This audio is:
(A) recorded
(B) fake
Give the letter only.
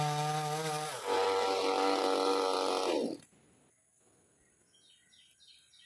A